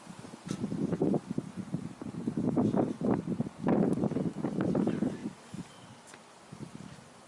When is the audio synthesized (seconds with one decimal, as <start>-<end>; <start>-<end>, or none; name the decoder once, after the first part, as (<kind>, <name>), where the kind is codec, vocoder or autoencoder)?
1.6-3.8 (vocoder, BigVGAN v2); 5.2-5.7